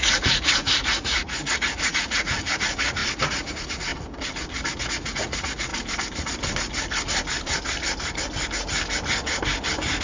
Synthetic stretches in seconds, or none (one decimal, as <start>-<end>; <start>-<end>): 0.0-3.9; 4.9-5.7